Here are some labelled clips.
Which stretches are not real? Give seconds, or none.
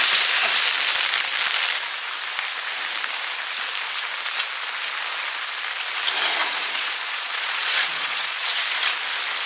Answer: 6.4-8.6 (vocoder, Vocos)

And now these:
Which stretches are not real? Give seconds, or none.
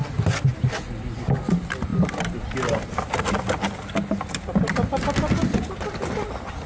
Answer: none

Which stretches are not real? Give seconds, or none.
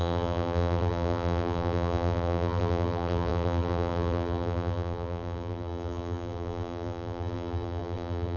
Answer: 0.0-8.4 (vocoder, BigVGAN v2)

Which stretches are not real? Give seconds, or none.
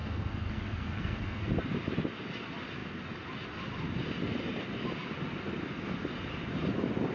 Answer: 0.0-1.5 (codec, SNAC)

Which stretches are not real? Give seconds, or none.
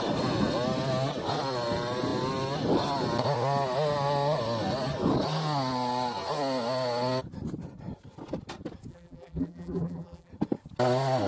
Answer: 8.9-10.3 (vocoder, BigVGAN v2)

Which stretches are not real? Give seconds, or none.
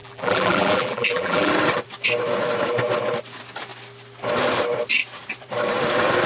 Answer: 0.0-1.5 (vocoder, BigVGAN v2)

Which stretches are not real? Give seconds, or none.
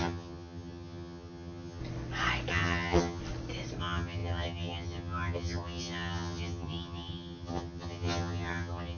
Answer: 0.0-1.8 (vocoder, HiFi-GAN); 2.5-3.2; 3.8-9.0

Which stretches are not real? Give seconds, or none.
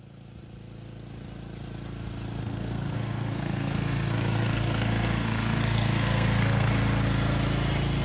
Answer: 2.4-6.7 (codec, SNAC)